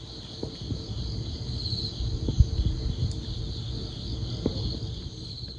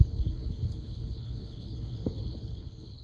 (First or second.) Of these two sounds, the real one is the first